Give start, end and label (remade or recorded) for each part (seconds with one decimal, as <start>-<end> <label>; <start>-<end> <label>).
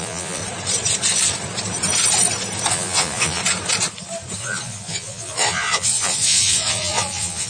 0.0-0.4 remade; 0.4-2.7 recorded; 2.7-3.4 remade; 3.4-4.4 recorded; 4.4-7.5 remade